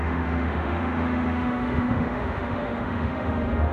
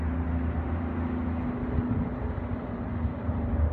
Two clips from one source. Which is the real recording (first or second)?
second